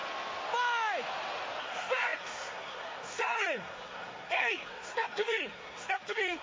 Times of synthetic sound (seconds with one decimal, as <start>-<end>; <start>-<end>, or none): 1.6-6.4